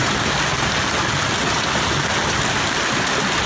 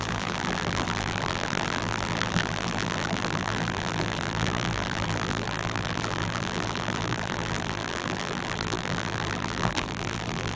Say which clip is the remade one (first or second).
second